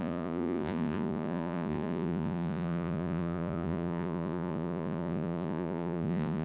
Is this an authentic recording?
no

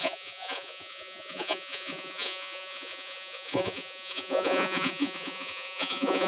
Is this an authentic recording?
no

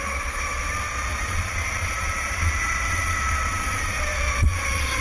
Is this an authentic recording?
no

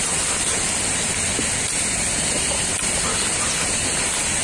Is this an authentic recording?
yes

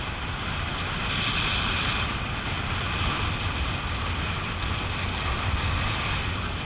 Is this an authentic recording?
yes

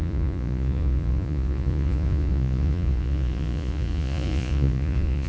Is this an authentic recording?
no